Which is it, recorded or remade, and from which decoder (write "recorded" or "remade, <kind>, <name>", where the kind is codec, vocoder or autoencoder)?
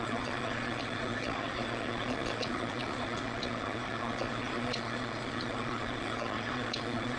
remade, vocoder, Vocos